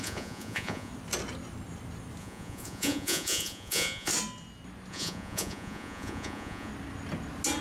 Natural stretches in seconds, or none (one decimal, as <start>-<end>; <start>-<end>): 0.9-2.2; 4.1-4.9; 6.7-7.6